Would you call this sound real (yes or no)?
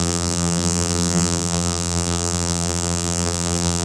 no